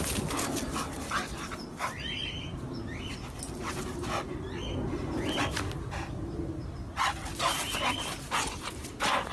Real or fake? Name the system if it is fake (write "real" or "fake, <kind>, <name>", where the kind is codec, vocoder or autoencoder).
real